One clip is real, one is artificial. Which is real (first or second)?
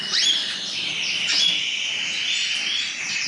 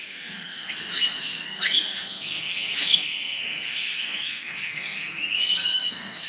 first